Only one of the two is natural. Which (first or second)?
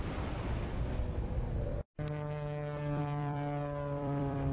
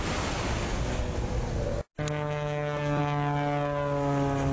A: second